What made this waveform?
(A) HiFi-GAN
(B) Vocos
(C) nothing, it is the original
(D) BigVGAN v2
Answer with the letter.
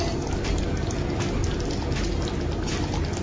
C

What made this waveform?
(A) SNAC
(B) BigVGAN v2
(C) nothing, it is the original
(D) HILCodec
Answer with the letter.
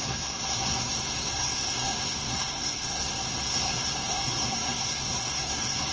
A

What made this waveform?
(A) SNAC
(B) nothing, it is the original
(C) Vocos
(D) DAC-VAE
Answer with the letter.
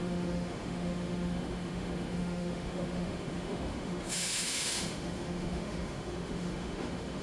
D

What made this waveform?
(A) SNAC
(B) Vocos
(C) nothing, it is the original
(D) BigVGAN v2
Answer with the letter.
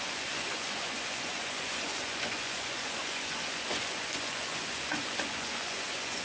B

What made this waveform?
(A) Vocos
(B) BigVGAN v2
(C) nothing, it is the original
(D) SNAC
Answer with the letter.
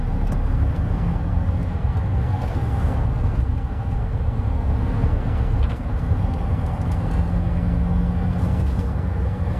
D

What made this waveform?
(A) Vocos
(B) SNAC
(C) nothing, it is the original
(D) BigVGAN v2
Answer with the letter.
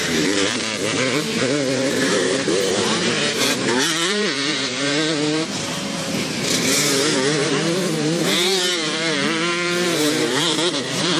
D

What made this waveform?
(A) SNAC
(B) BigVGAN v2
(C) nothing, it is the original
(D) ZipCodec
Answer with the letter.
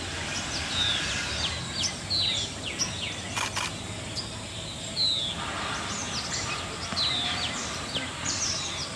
C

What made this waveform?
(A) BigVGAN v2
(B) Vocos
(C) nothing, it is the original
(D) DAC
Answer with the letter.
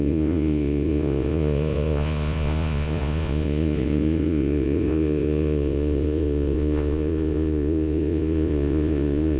B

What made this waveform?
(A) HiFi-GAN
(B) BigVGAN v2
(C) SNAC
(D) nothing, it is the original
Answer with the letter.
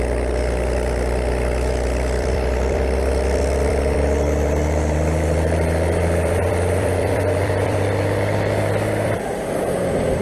B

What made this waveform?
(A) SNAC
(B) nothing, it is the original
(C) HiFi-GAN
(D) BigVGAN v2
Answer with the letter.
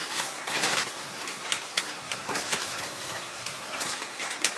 A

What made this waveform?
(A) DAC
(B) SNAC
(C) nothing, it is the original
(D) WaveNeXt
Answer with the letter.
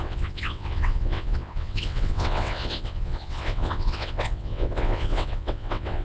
D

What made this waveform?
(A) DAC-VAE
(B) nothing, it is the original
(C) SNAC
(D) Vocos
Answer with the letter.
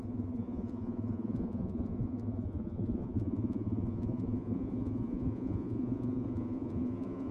D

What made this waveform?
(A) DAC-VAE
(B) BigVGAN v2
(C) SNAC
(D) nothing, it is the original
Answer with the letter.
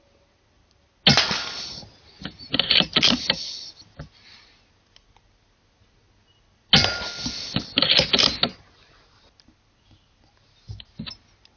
D